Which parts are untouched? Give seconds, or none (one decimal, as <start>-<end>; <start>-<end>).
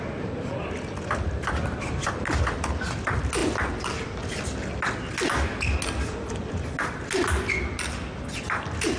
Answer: 0.0-9.0